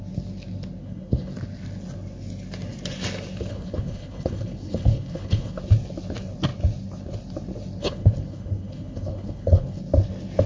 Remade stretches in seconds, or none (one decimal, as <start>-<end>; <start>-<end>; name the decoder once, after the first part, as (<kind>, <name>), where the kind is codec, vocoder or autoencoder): 0.8-1.3 (codec, HILCodec); 3.5-5.6; 7.8-9.8